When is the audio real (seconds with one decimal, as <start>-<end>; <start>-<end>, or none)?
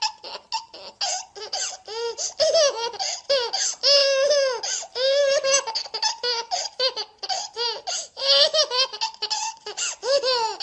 0.0-10.6